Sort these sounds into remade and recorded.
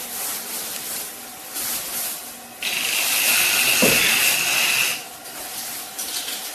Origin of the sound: recorded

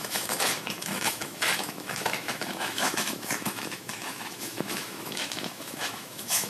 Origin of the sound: remade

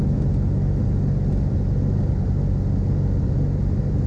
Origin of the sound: recorded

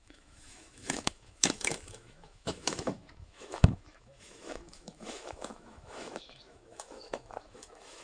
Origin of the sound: remade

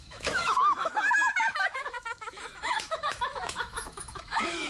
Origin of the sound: remade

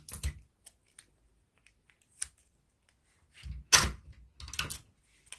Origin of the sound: recorded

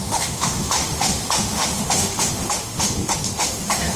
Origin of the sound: remade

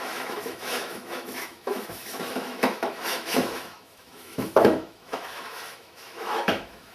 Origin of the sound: remade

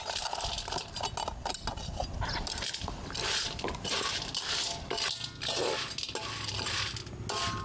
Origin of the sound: recorded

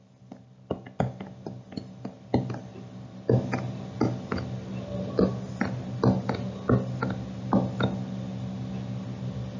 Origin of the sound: recorded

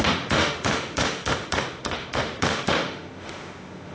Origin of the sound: remade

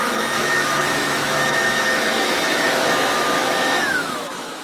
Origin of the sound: remade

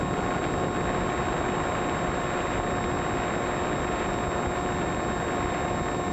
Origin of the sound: recorded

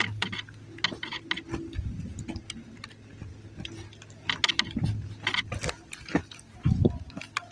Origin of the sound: recorded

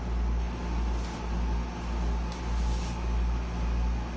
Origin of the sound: recorded